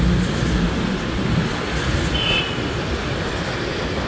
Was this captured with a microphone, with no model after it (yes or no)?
yes